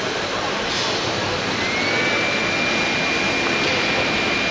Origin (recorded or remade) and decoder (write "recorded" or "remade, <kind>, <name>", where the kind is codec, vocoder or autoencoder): recorded